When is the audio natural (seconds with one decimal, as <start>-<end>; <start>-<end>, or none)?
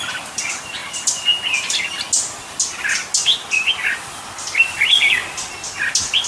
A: 0.0-6.3